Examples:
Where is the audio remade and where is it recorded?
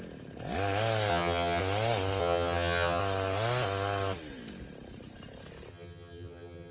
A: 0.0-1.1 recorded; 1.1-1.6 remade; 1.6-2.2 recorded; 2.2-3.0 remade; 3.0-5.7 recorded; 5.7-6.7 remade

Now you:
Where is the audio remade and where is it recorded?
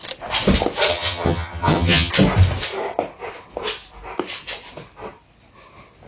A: 0.0-0.9 recorded; 0.9-2.1 remade; 2.1-6.1 recorded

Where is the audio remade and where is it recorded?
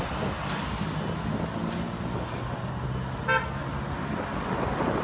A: 0.0-5.0 recorded